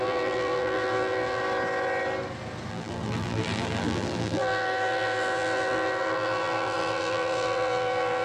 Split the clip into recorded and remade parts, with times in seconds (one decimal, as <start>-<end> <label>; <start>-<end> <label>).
0.0-1.4 remade; 1.4-2.7 recorded; 2.7-8.2 remade